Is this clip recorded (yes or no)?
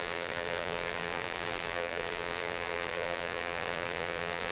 no